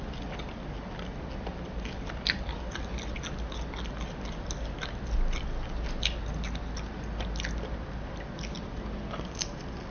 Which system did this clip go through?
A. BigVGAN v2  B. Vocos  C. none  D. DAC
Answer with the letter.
C